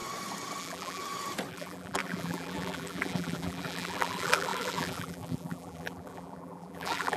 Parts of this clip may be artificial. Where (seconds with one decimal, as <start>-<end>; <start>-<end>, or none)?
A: 0.6-1.0; 1.5-7.2